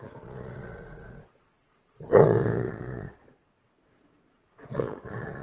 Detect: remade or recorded remade